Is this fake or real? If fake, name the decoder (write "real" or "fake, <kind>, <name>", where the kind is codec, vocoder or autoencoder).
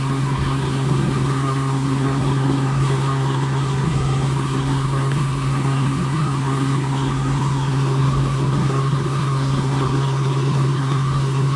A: fake, codec, SNAC